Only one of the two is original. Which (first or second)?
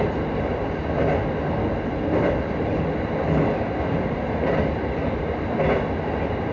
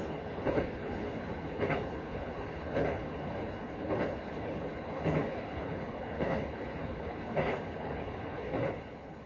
first